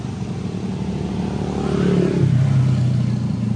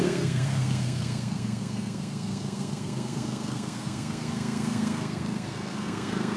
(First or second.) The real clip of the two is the first